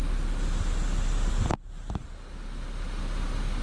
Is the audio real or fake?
real